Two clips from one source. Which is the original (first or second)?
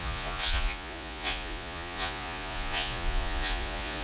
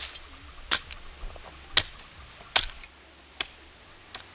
second